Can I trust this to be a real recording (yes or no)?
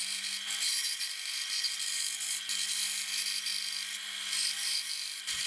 yes